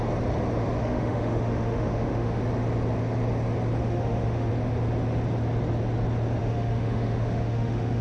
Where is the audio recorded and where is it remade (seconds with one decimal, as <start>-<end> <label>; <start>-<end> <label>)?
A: 0.0-0.8 recorded; 0.8-2.4 remade; 2.4-3.8 recorded; 3.8-4.5 remade; 4.5-6.4 recorded; 6.4-8.0 remade